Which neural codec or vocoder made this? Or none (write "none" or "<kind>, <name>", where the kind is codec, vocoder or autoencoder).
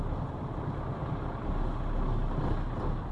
none